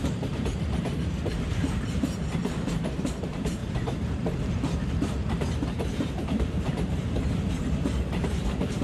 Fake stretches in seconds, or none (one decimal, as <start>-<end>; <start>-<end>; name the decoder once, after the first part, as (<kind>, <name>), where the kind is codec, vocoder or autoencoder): 0.0-2.4 (vocoder, BigVGAN v2); 2.9-8.8